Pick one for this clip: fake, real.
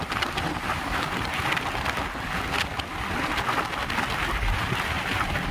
real